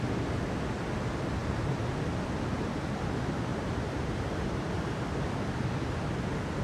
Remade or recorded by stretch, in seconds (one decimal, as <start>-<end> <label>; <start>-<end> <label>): 0.0-3.5 recorded; 3.5-4.7 remade; 4.7-6.6 recorded